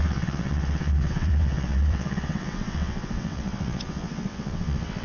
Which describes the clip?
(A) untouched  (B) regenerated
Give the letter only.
B